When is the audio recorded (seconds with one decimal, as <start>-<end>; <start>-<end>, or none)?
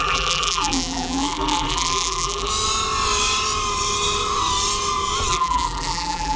2.5-5.3